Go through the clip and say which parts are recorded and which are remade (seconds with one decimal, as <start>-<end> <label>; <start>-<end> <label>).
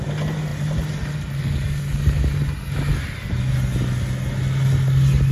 0.0-5.3 recorded